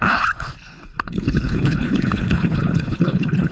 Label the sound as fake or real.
fake